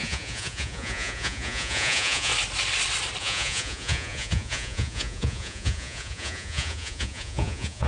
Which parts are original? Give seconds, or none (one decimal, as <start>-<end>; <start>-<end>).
2.3-3.2

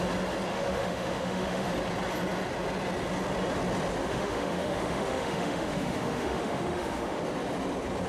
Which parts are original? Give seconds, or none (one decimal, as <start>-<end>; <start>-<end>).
0.0-0.5; 1.7-4.0; 7.2-8.1

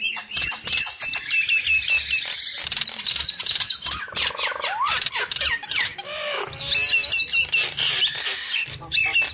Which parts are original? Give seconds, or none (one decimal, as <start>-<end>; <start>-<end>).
0.0-5.9; 6.7-9.3

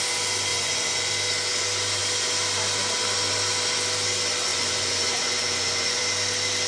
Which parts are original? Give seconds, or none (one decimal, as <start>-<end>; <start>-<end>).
0.0-0.5; 1.1-4.5; 6.0-6.7

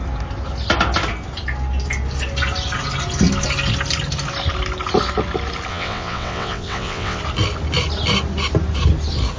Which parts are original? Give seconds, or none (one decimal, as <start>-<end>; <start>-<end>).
0.0-5.7; 7.2-9.4